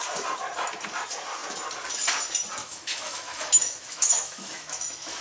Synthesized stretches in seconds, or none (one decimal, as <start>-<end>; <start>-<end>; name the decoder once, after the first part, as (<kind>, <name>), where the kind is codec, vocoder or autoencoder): 2.6-5.2 (autoencoder, DAC-VAE)